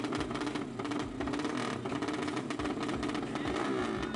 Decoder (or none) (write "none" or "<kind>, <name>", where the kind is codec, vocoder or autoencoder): none